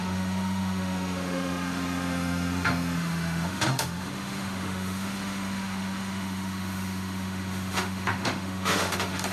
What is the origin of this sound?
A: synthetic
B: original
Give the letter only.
A